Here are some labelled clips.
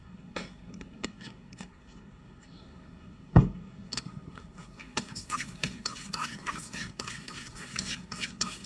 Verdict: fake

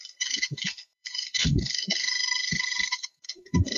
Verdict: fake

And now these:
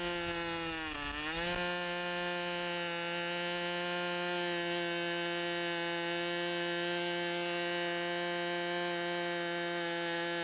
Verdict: real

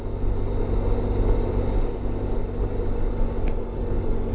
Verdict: real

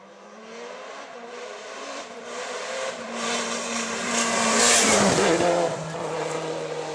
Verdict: fake